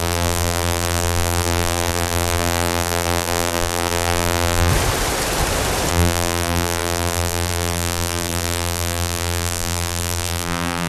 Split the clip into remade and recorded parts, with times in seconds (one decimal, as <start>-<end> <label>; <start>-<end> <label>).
0.0-4.7 remade; 4.7-5.9 recorded; 5.9-10.9 remade